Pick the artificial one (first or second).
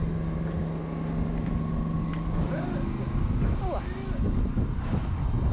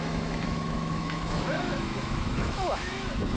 second